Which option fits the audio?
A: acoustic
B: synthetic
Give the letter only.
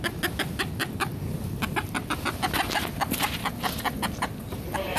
A